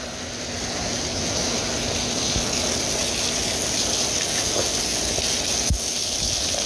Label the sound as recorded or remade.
recorded